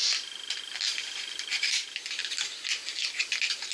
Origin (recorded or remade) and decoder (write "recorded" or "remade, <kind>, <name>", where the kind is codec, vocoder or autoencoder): recorded